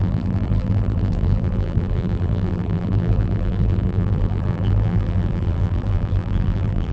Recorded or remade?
remade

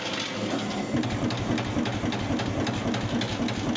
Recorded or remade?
recorded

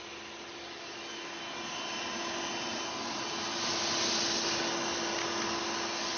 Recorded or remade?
recorded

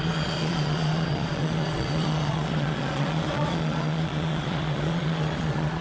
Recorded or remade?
remade